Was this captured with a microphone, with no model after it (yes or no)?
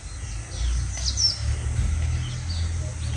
yes